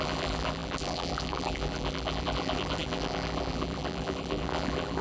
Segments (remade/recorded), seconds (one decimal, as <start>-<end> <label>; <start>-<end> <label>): 0.0-5.0 remade